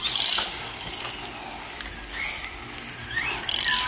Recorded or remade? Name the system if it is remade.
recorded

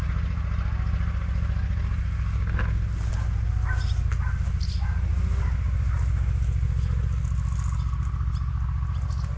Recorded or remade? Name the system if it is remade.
recorded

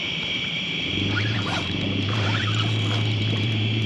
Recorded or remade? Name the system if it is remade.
remade, vocoder, BigVGAN v2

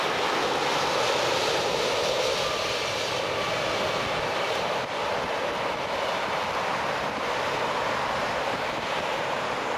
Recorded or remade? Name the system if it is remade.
remade, vocoder, BigVGAN v2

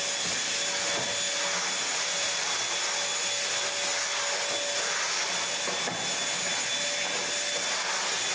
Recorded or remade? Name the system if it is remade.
recorded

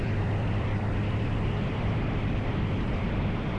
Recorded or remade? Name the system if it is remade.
remade, vocoder, BigVGAN v2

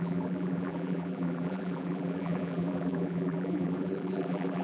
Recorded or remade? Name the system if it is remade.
remade, vocoder, BigVGAN v2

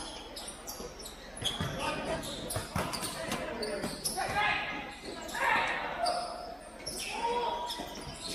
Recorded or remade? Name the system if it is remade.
recorded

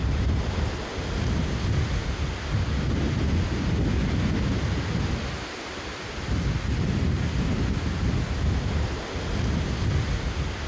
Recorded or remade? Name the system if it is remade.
recorded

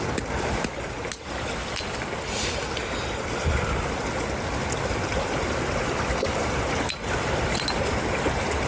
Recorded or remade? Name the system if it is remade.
recorded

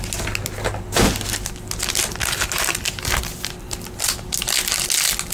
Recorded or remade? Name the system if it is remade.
recorded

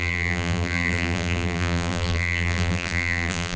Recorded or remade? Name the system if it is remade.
remade, vocoder, BigVGAN v2